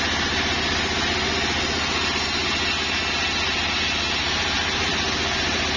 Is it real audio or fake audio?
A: real